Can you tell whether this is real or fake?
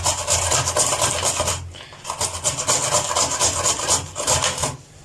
real